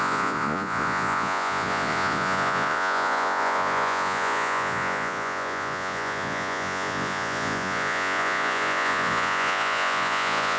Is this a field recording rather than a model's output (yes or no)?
no